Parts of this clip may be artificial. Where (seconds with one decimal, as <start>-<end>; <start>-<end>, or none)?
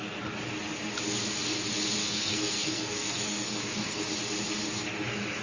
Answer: 2.0-4.0